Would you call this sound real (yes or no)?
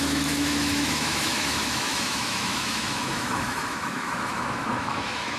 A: no